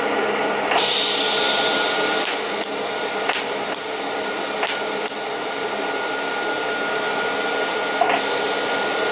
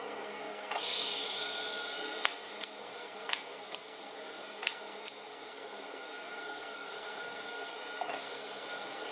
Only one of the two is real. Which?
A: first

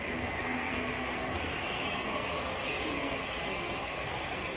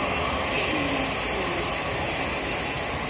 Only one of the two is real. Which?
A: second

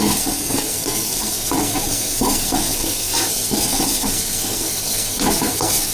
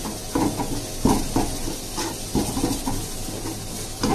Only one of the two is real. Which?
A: second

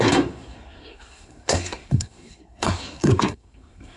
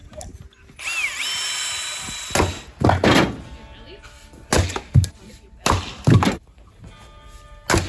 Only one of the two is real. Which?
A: second